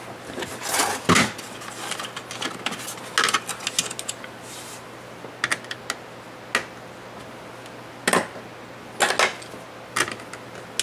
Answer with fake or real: real